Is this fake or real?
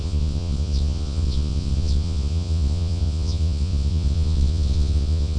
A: fake